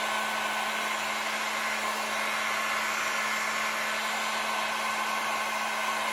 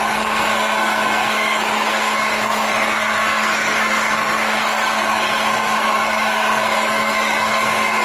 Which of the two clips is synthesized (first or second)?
second